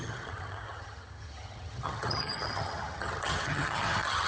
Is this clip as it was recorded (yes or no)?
no